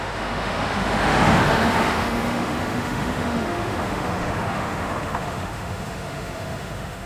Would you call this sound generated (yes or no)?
yes